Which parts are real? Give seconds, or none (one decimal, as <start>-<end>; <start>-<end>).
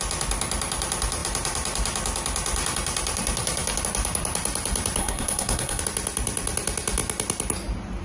0.0-5.0; 5.8-8.0